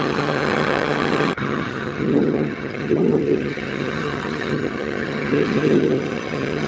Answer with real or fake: fake